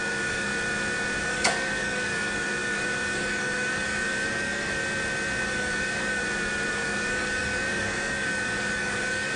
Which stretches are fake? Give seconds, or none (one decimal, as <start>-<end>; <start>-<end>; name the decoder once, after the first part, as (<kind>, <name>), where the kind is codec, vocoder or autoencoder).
0.0-0.5 (codec, DAC); 1.2-4.8; 5.4-6.2; 6.7-9.4